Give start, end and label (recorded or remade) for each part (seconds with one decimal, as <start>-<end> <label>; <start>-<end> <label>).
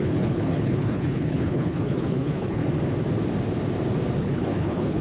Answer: 0.0-2.6 remade; 2.6-4.2 recorded; 4.2-5.0 remade